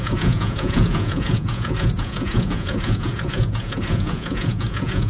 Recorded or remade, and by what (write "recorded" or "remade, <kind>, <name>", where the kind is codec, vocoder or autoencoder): remade, vocoder, Vocos